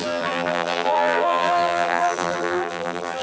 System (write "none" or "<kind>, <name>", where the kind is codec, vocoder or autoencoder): vocoder, BigVGAN v2